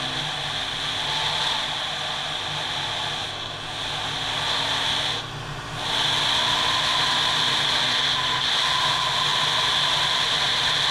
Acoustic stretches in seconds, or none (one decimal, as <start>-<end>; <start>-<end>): 0.0-10.9